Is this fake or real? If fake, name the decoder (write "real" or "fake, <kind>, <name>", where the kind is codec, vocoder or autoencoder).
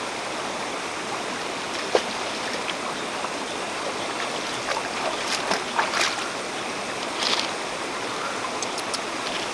real